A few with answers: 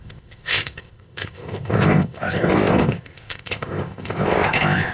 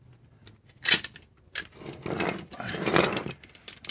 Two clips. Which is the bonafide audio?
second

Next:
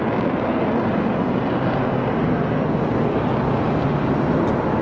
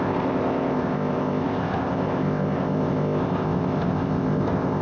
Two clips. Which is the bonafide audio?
first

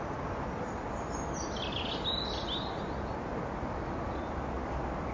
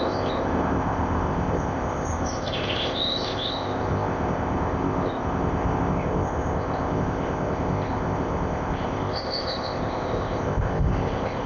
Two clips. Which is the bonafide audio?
first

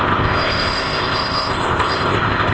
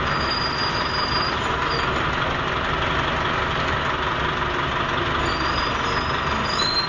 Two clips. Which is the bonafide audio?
second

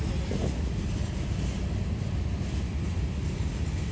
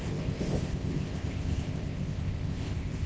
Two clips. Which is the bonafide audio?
first